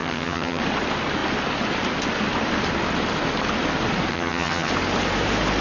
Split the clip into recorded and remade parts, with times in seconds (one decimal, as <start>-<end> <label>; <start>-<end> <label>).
0.0-0.6 remade; 0.6-4.1 recorded; 4.1-4.7 remade; 4.7-5.6 recorded